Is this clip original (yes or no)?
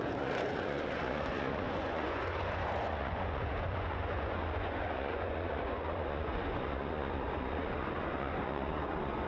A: no